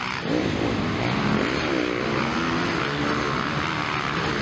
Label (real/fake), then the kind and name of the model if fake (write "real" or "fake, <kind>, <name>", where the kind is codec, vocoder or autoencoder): real